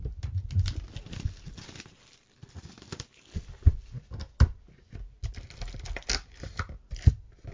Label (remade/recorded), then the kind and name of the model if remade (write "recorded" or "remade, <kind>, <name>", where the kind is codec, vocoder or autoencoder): recorded